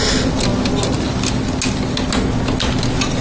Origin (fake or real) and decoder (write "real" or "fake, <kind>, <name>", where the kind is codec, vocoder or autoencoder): real